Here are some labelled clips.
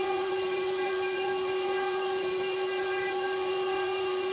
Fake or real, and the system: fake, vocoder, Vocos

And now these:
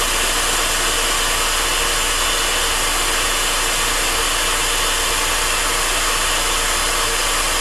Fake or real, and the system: real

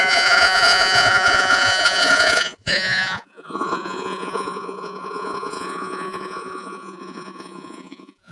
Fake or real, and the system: fake, vocoder, Vocos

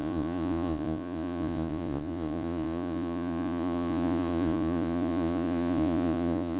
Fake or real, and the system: fake, vocoder, Vocos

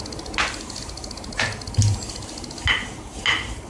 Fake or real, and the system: real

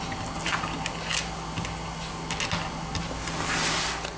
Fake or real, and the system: real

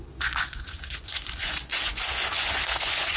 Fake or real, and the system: fake, vocoder, Vocos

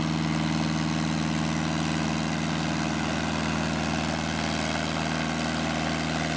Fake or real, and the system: real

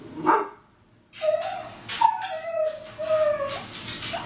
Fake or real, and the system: real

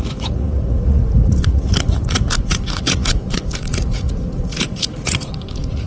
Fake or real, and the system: fake, vocoder, Vocos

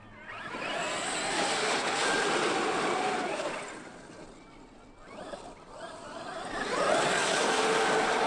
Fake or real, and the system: real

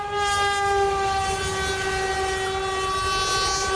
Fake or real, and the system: real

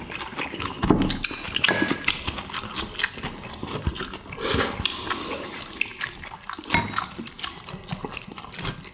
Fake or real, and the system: real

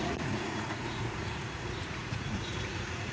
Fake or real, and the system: fake, vocoder, Vocos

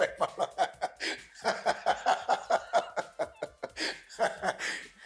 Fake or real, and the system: real